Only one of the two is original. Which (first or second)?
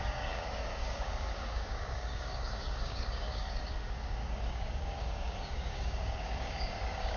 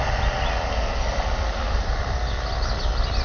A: second